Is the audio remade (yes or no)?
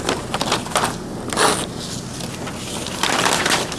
no